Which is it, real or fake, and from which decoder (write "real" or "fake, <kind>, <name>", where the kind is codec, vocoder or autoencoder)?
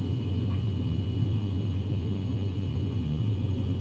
fake, vocoder, Vocos